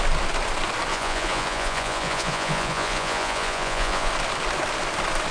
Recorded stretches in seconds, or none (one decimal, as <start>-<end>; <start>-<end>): 0.0-0.9; 4.1-5.3